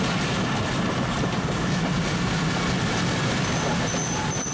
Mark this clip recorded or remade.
recorded